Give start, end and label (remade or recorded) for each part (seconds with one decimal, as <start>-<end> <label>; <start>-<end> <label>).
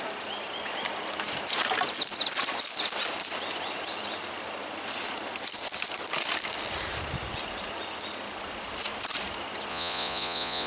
0.0-9.7 recorded; 9.7-10.7 remade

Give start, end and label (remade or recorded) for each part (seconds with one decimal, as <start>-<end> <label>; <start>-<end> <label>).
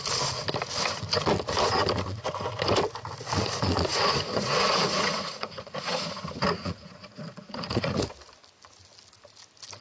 0.0-3.9 recorded; 3.9-8.1 remade; 8.1-9.8 recorded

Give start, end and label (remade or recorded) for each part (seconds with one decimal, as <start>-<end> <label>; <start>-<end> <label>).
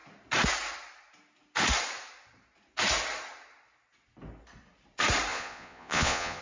0.0-5.3 recorded; 5.3-6.4 remade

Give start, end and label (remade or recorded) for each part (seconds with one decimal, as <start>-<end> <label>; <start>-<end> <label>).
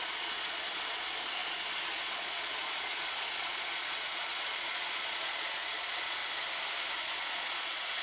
0.0-6.2 remade; 6.2-7.0 recorded; 7.0-8.0 remade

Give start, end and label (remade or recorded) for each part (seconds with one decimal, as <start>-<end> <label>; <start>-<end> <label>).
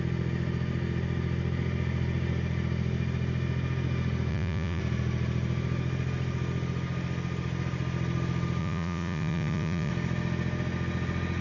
0.0-4.3 recorded; 4.3-4.8 remade; 4.8-8.6 recorded; 8.6-9.9 remade; 9.9-11.4 recorded